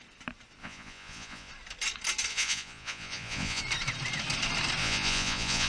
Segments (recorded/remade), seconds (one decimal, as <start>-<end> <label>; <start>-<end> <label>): 0.0-0.6 recorded; 0.6-1.5 remade; 1.5-2.3 recorded; 2.3-3.6 remade; 3.6-4.8 recorded; 4.8-5.7 remade